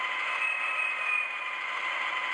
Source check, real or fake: fake